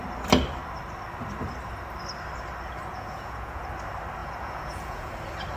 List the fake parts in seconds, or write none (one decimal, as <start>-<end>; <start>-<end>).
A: 2.9-3.6; 4.2-5.1

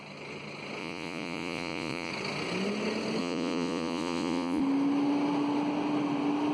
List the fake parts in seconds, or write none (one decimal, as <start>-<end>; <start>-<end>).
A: 0.8-2.1; 3.2-4.6